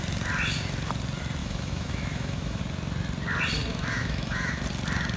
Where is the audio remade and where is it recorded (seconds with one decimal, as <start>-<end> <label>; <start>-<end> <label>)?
0.0-1.4 recorded; 1.4-2.6 remade; 2.6-3.7 recorded; 3.7-4.6 remade; 4.6-5.2 recorded